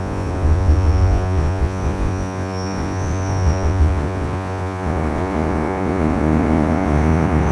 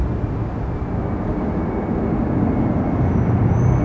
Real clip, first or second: second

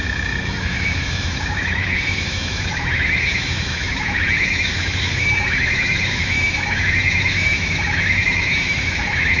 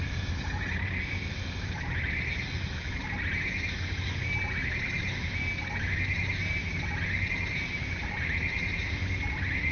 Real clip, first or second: second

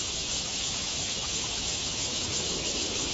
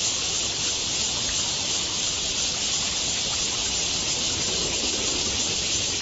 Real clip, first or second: second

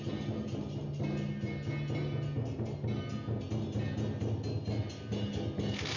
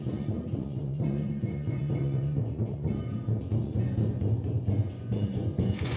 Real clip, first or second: first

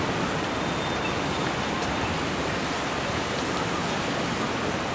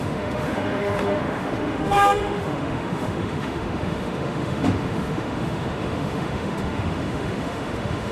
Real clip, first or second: first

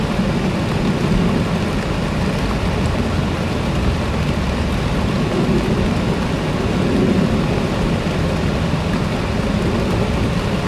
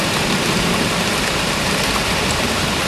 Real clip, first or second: first